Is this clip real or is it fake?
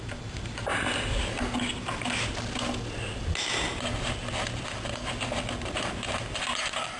real